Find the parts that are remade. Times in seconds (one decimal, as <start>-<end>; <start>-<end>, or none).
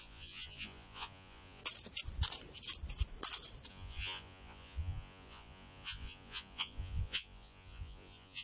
0.0-1.6; 3.7-8.4